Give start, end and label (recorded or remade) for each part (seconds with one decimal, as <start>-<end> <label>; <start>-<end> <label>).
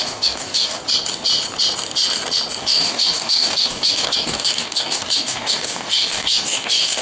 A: 0.0-0.8 remade; 0.8-2.6 recorded; 2.6-7.0 remade